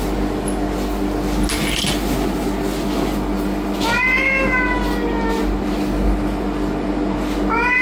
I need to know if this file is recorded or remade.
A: recorded